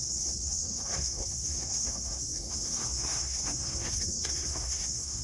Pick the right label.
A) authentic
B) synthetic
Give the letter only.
B